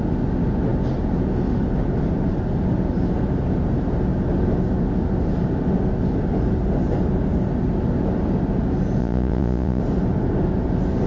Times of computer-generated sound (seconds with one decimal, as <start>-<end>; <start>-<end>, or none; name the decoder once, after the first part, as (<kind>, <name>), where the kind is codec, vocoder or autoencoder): 9.0-9.8 (vocoder, Vocos)